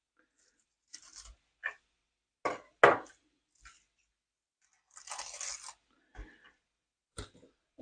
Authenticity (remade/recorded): recorded